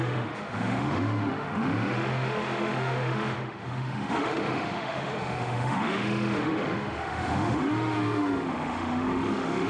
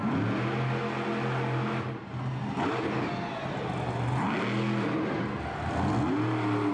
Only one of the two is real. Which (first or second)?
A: second